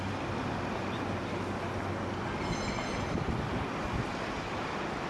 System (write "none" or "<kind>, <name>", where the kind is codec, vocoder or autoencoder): none